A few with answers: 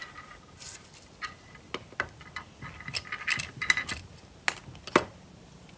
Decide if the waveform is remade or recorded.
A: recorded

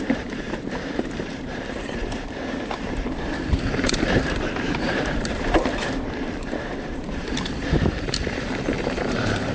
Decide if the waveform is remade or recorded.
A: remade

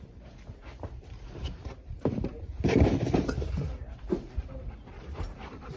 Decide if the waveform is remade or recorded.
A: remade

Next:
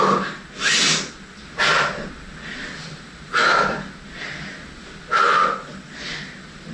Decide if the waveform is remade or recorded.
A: recorded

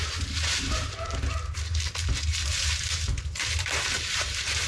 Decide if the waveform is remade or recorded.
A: remade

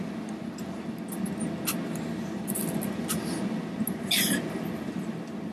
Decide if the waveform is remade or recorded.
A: recorded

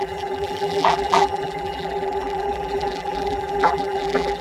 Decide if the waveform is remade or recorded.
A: remade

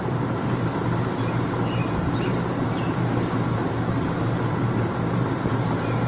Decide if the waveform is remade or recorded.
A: remade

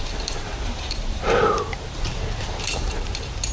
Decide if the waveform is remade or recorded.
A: remade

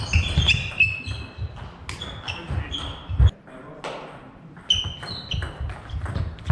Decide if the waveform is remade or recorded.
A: recorded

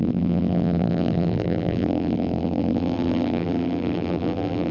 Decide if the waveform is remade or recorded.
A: remade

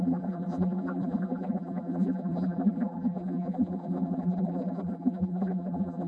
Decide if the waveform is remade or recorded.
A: remade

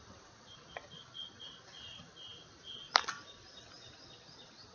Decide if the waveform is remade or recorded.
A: remade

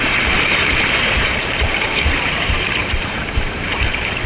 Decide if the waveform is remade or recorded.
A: remade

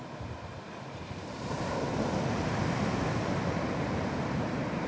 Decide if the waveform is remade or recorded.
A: remade